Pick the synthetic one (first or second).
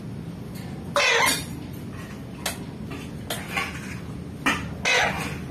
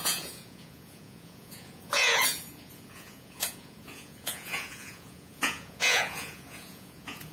second